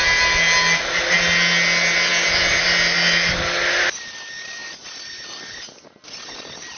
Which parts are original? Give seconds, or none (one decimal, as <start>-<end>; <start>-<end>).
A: 0.0-6.8